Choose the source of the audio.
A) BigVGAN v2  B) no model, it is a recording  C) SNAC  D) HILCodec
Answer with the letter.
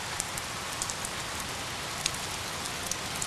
B